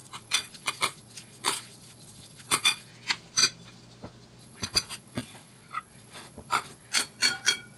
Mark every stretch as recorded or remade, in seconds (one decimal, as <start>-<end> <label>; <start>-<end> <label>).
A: 0.0-2.9 remade; 2.9-4.4 recorded; 4.4-7.8 remade